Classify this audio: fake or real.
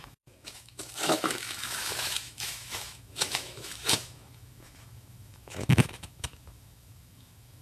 fake